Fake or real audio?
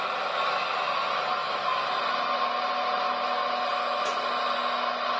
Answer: real